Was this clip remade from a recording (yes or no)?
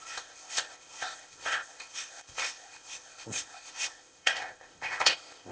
yes